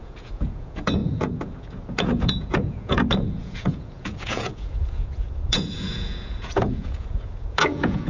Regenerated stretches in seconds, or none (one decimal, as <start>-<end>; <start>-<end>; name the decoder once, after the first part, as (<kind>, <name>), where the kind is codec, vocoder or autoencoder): 0.0-8.1 (vocoder, Vocos)